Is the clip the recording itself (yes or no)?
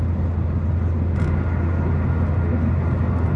yes